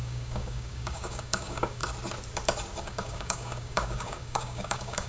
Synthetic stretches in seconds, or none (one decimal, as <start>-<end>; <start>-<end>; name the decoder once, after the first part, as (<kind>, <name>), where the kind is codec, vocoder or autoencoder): 0.0-1.8 (codec, DAC); 2.8-5.1